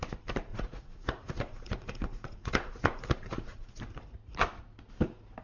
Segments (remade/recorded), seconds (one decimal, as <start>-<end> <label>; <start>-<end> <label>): 0.0-0.5 recorded; 0.5-3.7 remade; 3.7-5.4 recorded